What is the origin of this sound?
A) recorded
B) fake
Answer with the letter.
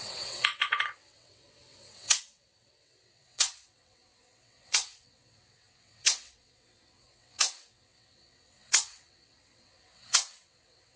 B